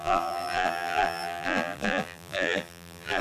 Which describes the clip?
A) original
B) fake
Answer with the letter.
B